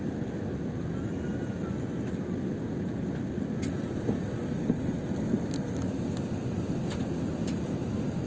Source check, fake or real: real